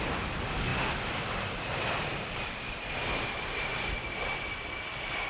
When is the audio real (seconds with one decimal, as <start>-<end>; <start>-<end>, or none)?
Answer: none